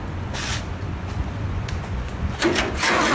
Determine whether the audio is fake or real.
fake